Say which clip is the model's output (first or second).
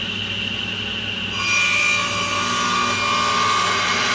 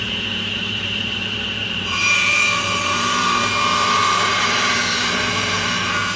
second